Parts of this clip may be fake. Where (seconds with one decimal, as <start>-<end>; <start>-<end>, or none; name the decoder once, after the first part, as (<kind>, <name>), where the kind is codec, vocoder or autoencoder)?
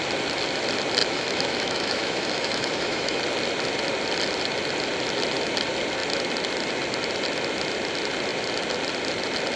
1.0-3.2 (autoencoder, DAC-VAE)